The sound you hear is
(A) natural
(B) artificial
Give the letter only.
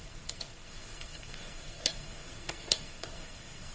B